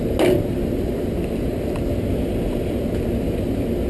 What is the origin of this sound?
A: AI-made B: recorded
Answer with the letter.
B